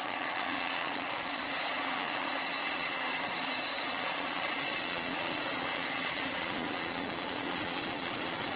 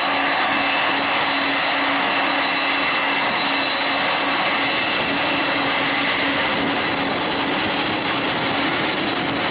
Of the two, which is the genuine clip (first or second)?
second